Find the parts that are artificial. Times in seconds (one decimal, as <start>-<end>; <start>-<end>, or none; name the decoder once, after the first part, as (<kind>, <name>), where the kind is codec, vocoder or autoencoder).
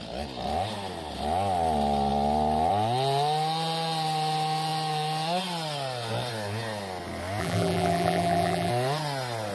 7.4-8.7 (vocoder, BigVGAN v2)